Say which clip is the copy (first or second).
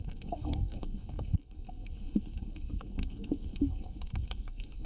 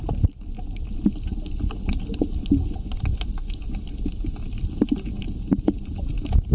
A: first